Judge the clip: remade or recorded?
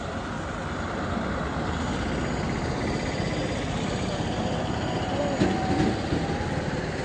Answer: recorded